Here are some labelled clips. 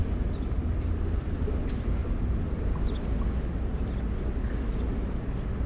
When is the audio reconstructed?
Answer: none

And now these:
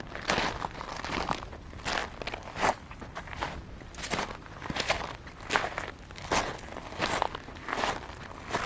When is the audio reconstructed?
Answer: none

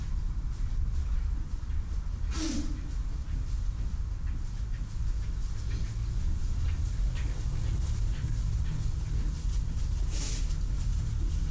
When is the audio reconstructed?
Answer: none

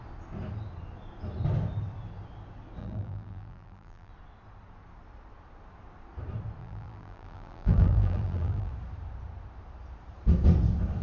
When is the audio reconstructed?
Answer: 2.8-4.1 (vocoder, BigVGAN v2); 6.6-8.7